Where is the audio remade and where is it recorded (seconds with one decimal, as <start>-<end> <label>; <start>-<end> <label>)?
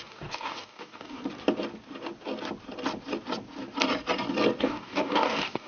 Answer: 0.0-1.2 remade; 1.2-4.6 recorded; 4.6-5.7 remade